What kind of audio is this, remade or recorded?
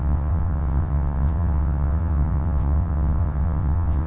remade